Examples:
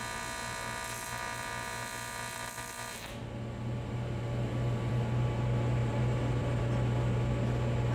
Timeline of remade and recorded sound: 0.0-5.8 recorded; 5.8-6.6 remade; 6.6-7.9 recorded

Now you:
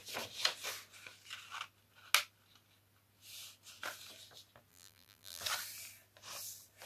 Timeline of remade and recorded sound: 0.0-4.7 recorded; 4.7-5.4 remade; 5.4-6.9 recorded

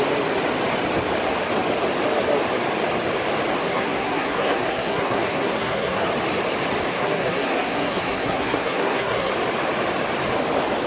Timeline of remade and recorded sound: 0.0-3.6 recorded; 3.6-6.1 remade; 6.1-6.9 recorded; 6.9-9.3 remade; 9.3-10.9 recorded

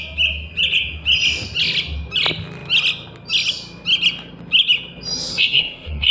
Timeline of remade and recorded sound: 0.0-5.3 recorded; 5.3-6.1 remade

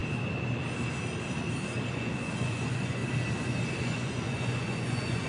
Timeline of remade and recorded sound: 0.0-1.9 recorded; 1.9-3.0 remade; 3.0-3.7 recorded; 3.7-5.3 remade

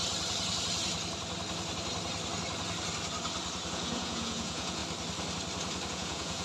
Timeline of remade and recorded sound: 0.0-3.7 recorded; 3.7-4.8 remade; 4.8-5.9 recorded; 5.9-6.4 remade